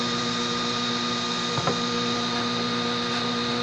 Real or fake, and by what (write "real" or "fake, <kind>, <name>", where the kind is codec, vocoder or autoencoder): real